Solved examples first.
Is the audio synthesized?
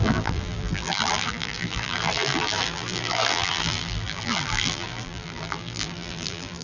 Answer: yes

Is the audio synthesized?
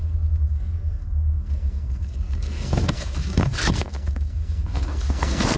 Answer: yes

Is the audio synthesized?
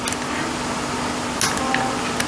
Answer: no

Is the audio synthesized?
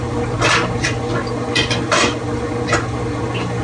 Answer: no